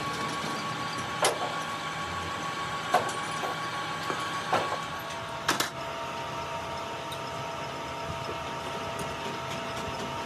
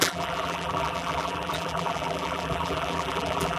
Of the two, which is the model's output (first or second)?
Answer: second